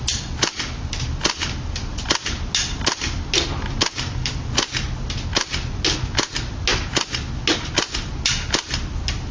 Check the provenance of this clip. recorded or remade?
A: recorded